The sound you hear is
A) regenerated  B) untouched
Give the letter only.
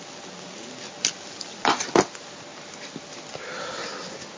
B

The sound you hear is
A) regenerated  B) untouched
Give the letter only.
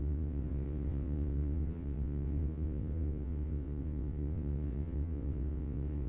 A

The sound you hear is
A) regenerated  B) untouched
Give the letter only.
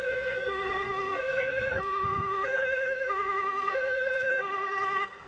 A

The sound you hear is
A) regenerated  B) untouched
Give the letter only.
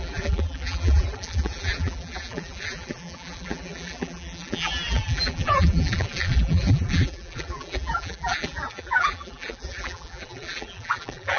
A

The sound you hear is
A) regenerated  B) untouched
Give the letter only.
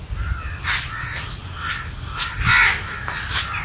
B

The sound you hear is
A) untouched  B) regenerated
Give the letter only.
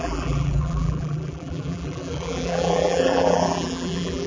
B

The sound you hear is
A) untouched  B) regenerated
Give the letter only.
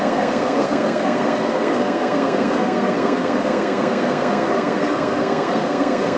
B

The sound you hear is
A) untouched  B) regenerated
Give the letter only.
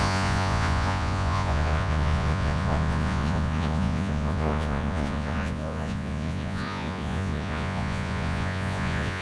B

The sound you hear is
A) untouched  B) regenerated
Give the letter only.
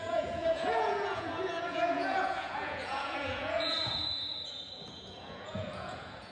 B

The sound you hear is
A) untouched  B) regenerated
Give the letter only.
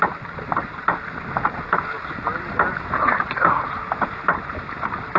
A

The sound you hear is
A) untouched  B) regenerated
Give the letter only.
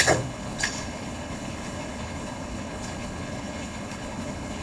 B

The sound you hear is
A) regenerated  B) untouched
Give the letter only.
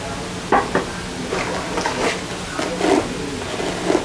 B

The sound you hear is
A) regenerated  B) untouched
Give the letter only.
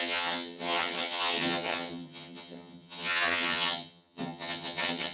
A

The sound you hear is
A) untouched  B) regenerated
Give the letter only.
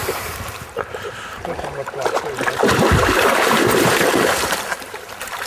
B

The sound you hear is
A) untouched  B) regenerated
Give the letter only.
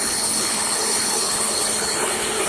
B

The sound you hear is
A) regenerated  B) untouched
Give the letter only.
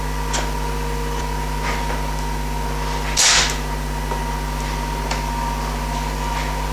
B